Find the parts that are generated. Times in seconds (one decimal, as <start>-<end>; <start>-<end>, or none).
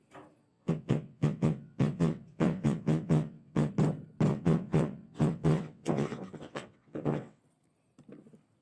0.5-3.7; 4.3-7.4